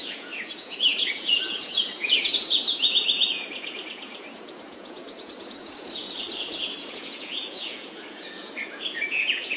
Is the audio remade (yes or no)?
yes